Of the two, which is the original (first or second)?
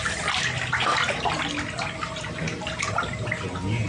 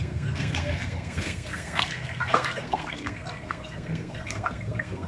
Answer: first